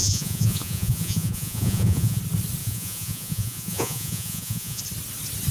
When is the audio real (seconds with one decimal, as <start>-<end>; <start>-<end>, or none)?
2.2-2.6; 4.8-5.5